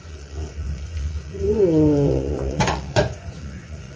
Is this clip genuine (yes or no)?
no